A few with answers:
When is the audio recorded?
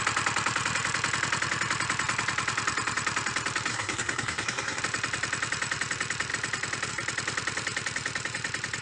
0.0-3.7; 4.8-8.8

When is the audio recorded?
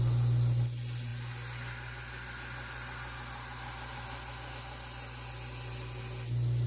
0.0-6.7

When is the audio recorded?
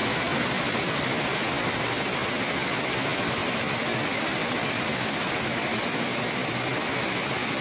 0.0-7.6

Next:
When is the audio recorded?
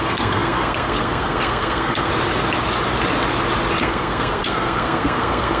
2.1-3.8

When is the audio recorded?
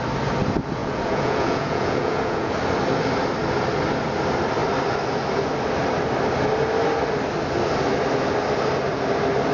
0.0-0.8; 2.5-9.5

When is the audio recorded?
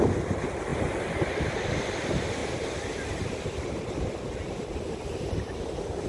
2.4-3.3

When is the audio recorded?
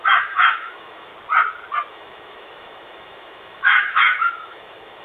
1.1-1.9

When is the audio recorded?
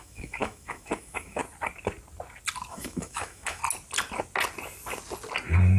1.4-2.7; 3.6-5.8